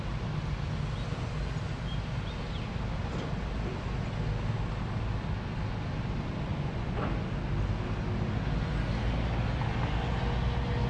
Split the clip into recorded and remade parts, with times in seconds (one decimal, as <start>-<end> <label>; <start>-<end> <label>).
0.0-6.5 recorded; 6.5-7.0 remade; 7.0-10.9 recorded